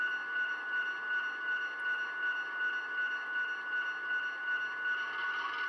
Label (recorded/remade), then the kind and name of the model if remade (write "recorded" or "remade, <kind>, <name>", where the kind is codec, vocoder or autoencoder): recorded